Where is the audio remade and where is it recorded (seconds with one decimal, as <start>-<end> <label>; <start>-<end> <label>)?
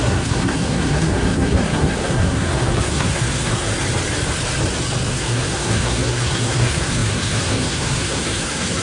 0.0-3.7 remade; 3.7-5.1 recorded; 5.1-8.8 remade